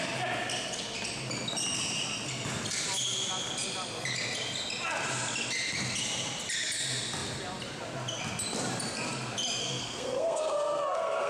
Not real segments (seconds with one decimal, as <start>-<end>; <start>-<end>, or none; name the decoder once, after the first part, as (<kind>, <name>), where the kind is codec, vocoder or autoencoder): 9.6-11.3 (codec, SNAC)